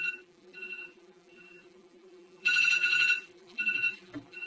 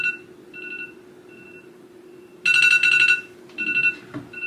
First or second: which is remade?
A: first